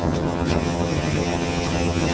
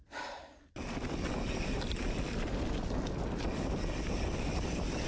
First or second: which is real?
second